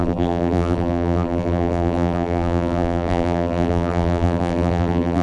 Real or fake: fake